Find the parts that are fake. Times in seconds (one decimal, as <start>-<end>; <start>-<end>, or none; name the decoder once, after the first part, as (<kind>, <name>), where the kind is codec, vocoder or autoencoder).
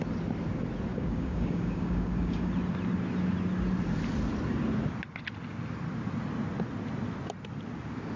0.9-2.5 (codec, DAC)